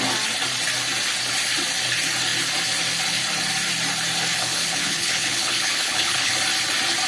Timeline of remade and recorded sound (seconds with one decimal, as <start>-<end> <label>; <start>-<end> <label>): 0.0-4.3 recorded; 4.3-6.3 remade; 6.3-7.1 recorded